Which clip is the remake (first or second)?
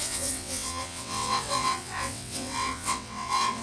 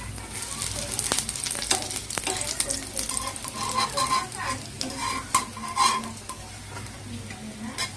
first